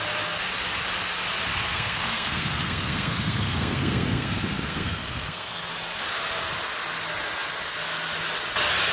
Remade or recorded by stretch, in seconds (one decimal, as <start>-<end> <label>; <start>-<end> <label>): 0.0-1.5 recorded; 1.5-5.7 remade; 5.7-8.9 recorded